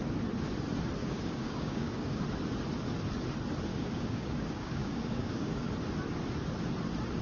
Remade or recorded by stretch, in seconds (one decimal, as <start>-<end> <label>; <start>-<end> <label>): 0.0-1.0 recorded; 1.0-2.2 remade; 2.2-3.7 recorded; 3.7-5.7 remade; 5.7-7.2 recorded